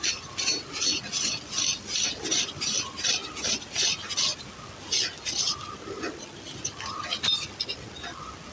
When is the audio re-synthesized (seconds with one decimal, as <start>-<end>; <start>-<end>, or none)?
none